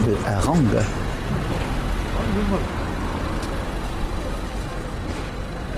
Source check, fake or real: real